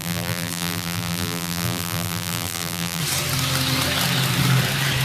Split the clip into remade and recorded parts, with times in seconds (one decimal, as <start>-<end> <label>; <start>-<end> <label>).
0.0-3.0 remade; 3.0-5.0 recorded